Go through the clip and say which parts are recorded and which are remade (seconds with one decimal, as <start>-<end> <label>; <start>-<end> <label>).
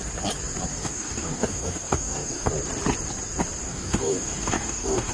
0.0-0.7 recorded; 0.7-2.5 remade; 2.5-3.6 recorded; 3.6-5.1 remade